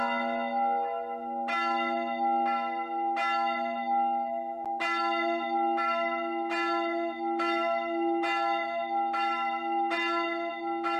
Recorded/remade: recorded